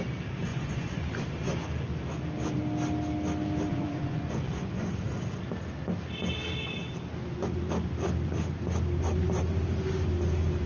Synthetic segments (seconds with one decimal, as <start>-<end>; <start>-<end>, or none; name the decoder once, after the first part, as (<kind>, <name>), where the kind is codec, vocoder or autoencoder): 0.5-1.1 (vocoder, Vocos); 3.7-4.9